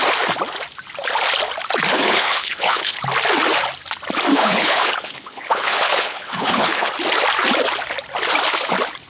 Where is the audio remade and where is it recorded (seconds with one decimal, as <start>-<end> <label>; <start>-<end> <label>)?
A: 0.0-1.9 recorded; 1.9-3.0 remade; 3.0-4.3 recorded; 4.3-6.9 remade; 6.9-9.1 recorded